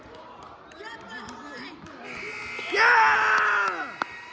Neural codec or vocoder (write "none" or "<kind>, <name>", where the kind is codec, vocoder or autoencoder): none